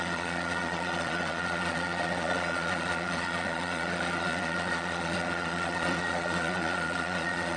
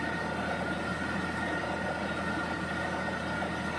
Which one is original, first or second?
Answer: second